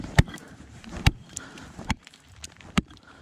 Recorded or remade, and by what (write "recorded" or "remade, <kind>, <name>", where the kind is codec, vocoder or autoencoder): remade, vocoder, BigVGAN v2